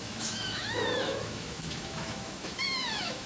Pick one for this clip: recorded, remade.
remade